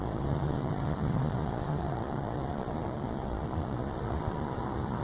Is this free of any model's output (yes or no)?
no